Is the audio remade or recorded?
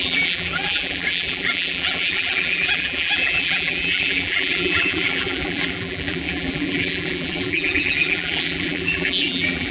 remade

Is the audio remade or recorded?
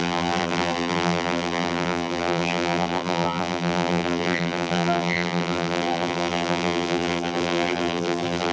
remade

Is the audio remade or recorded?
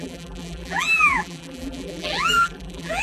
remade